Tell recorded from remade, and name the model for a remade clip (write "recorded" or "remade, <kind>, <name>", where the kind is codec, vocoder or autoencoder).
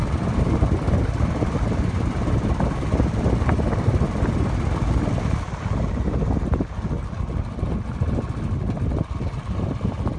recorded